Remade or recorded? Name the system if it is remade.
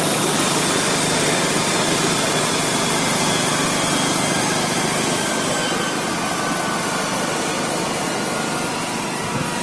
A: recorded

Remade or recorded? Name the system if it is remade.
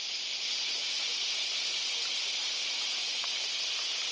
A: recorded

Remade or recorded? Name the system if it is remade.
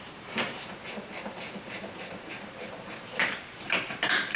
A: remade, vocoder, BigVGAN v2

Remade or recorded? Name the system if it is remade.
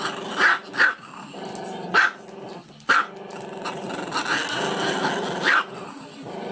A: recorded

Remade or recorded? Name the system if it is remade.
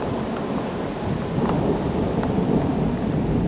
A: recorded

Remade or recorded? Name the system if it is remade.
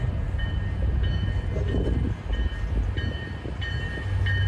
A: recorded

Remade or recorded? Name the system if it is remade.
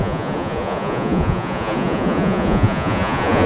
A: remade, vocoder, Vocos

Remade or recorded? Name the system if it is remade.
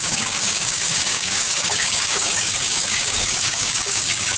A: remade, codec, DAC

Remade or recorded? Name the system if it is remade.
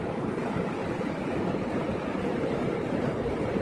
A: recorded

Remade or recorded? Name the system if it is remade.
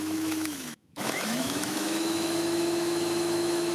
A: remade, autoencoder, DAC-VAE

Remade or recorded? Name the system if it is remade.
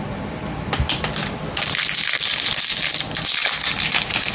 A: recorded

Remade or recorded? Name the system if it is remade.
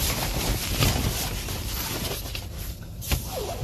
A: recorded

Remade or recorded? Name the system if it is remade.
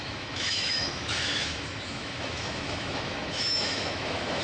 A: remade, autoencoder, DAC-VAE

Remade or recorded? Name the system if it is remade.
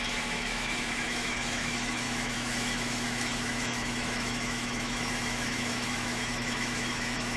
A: remade, autoencoder, DAC-VAE